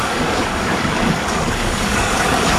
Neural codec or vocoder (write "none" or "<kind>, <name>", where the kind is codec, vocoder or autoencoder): codec, DAC